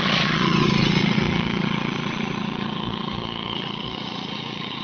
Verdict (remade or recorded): remade